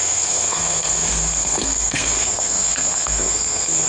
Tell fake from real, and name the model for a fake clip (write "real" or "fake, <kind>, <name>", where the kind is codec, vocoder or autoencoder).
fake, codec, SNAC